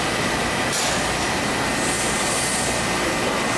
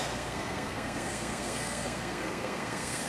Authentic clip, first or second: first